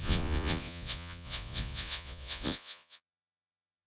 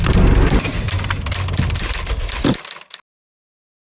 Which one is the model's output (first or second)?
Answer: first